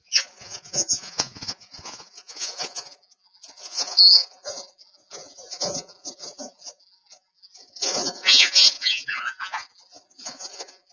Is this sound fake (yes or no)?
yes